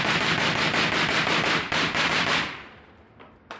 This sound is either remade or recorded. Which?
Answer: recorded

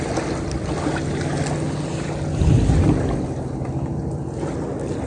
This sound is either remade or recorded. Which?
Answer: recorded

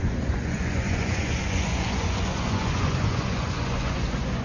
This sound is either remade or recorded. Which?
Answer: remade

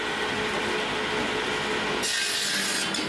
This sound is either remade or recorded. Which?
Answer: recorded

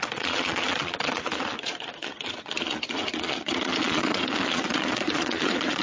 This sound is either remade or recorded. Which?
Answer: remade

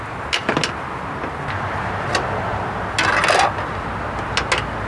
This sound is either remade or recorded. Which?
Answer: recorded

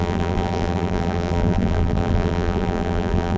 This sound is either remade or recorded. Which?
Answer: remade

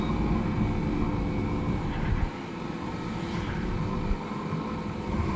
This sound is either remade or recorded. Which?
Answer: recorded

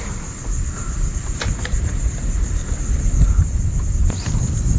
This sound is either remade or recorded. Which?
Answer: recorded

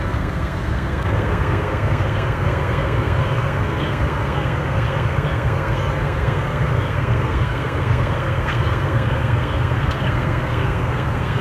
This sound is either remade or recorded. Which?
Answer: remade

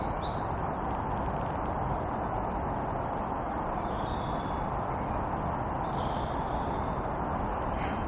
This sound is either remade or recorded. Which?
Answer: recorded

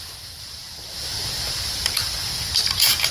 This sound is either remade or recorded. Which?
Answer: remade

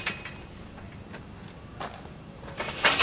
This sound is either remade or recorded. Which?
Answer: recorded